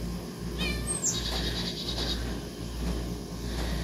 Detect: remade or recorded recorded